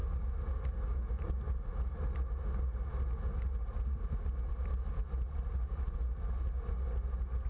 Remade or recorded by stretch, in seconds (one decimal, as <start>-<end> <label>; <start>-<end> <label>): 0.0-7.5 recorded